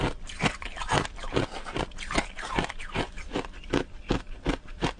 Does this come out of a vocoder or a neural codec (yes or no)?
no